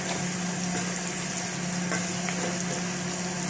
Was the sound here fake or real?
real